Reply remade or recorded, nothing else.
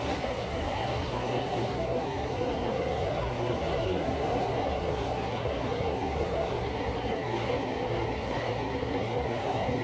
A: remade